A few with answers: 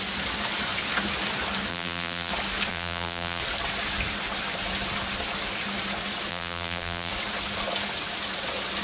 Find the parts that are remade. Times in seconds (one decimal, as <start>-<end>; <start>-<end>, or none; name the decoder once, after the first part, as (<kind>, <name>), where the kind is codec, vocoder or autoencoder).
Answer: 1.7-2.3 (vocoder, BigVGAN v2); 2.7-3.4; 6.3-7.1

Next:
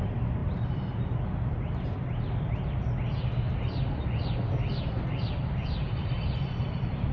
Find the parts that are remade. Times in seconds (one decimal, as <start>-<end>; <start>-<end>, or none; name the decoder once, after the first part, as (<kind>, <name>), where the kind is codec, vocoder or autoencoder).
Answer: 0.4-1.3 (vocoder, BigVGAN v2)

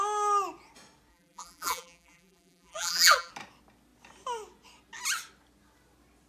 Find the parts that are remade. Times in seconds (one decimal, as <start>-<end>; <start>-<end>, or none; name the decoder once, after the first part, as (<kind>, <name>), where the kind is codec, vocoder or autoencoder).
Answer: 1.1-3.3 (vocoder, BigVGAN v2)